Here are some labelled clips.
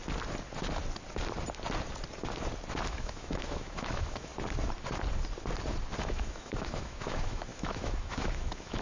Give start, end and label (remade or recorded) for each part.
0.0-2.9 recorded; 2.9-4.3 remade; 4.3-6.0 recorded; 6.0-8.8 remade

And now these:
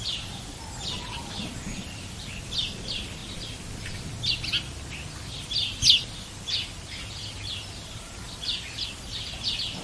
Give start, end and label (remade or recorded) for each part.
0.0-9.8 recorded

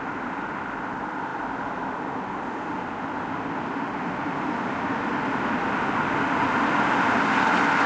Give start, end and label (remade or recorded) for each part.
0.0-7.9 recorded

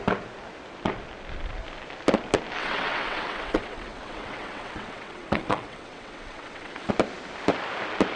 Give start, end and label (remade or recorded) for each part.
0.0-2.6 recorded; 2.6-6.9 remade; 6.9-8.2 recorded